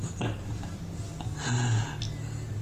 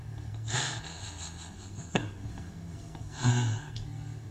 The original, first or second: first